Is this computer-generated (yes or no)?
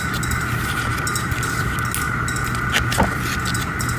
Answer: no